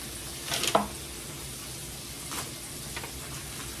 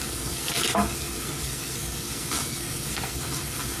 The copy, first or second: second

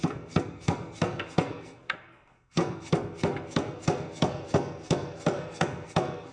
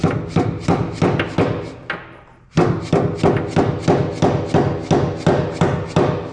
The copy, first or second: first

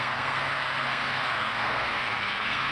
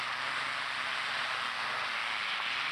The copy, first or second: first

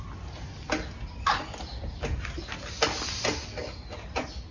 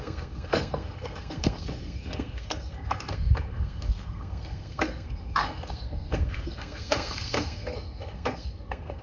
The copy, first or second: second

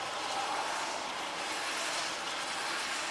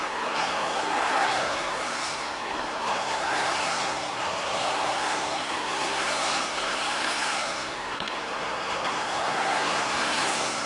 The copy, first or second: second